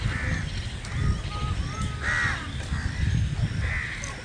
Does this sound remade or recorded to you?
recorded